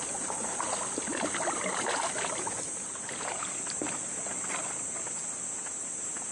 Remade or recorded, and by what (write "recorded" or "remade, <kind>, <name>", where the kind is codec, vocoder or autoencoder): recorded